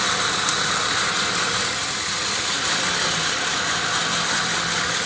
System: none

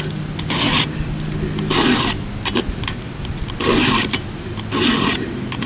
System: none